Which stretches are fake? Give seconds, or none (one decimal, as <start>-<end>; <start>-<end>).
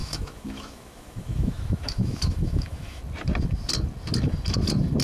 0.0-3.0